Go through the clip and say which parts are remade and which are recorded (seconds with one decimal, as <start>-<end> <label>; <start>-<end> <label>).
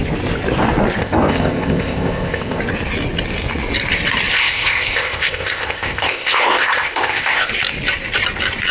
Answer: 0.0-1.0 recorded; 1.0-2.6 remade; 2.6-4.3 recorded; 4.3-7.5 remade; 7.5-8.7 recorded